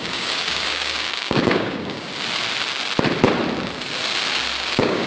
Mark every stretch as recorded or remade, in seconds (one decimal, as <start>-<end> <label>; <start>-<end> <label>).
0.0-2.1 remade; 2.1-4.6 recorded; 4.6-5.1 remade